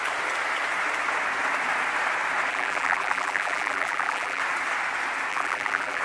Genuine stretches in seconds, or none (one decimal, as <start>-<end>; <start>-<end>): 0.0-2.5; 4.4-5.3

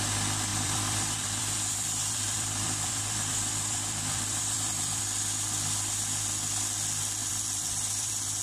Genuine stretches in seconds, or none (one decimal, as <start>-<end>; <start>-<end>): 0.0-0.5; 5.0-7.2

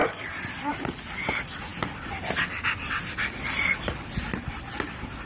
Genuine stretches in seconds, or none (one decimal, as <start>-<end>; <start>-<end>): 0.0-5.3

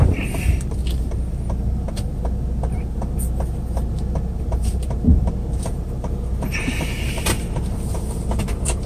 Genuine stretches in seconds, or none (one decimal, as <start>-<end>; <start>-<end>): 0.8-4.4

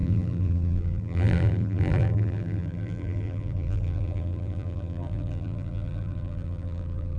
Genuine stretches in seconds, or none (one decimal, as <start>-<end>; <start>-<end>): none

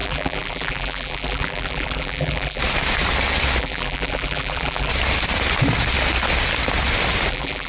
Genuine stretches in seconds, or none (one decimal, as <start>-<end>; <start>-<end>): 2.6-3.6; 4.9-7.3

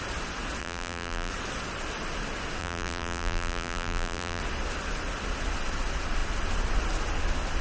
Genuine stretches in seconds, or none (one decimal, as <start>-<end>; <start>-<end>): 0.0-0.6; 1.3-2.6; 4.4-7.6

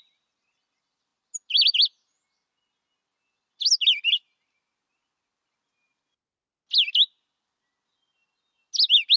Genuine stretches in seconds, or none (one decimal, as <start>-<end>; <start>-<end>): 0.0-9.2